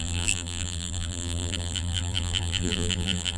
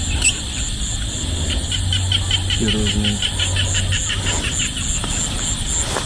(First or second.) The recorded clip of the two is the second